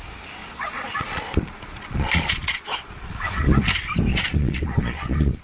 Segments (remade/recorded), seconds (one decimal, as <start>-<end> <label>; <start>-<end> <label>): 0.0-0.4 recorded; 0.4-3.6 remade; 3.6-4.1 recorded; 4.1-5.4 remade